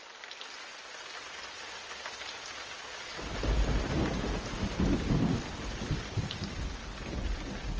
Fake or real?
real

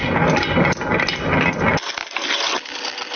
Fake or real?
real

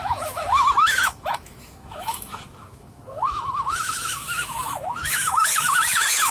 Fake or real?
fake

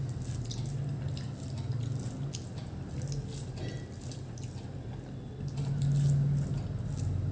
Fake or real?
real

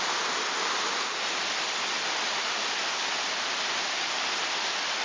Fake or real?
real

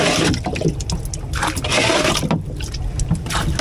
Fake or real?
real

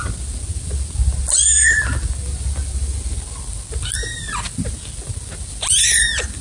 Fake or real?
real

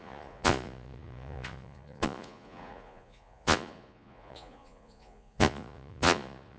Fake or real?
fake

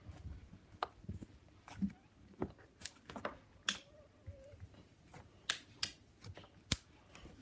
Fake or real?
real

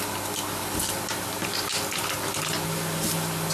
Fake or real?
real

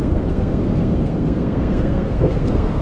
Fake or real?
fake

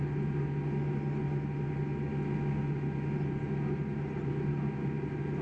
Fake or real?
real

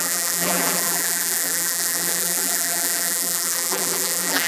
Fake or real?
fake